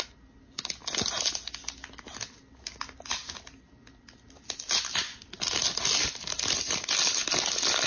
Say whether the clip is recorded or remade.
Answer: recorded